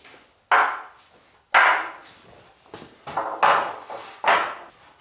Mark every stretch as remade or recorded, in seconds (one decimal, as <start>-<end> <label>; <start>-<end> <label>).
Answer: 0.0-5.0 recorded